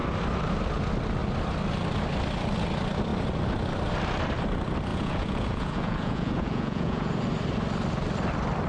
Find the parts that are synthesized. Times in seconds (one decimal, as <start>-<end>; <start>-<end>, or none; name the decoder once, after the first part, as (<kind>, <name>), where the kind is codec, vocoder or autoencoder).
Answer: 4.9-7.1 (vocoder, Vocos)